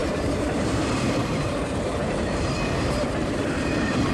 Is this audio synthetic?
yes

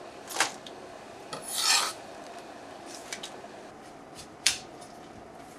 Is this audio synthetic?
no